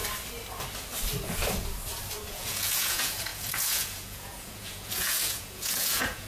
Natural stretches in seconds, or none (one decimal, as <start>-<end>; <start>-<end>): 0.0-2.3